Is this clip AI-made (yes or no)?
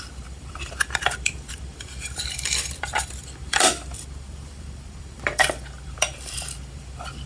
yes